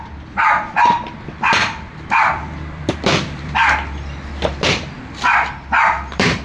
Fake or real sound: fake